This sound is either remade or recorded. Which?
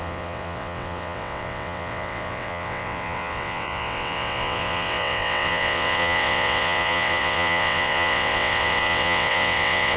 remade